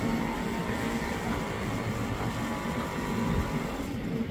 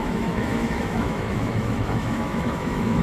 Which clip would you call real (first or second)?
first